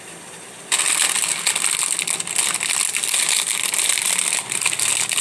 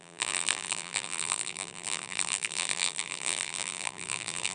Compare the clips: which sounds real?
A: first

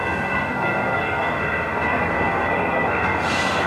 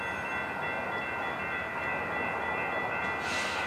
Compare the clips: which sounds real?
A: second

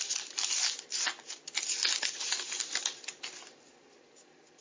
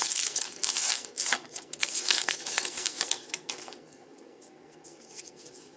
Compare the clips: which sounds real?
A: first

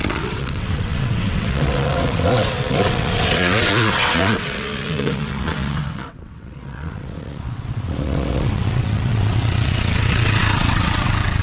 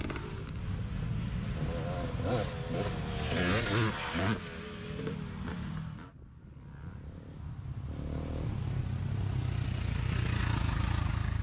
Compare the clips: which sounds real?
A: second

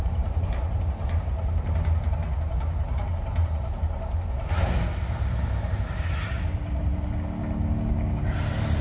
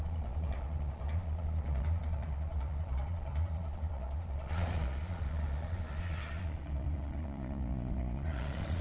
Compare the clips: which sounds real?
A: first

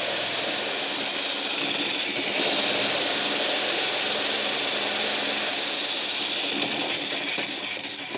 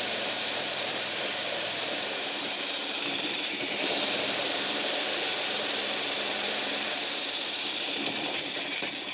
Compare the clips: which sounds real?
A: first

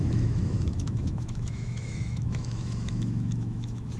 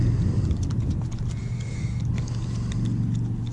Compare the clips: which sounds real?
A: second